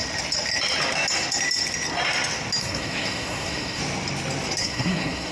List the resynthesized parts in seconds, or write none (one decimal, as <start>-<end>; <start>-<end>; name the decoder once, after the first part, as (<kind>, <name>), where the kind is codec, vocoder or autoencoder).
2.6-3.8 (codec, SNAC); 4.6-5.3